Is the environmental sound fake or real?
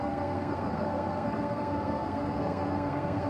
fake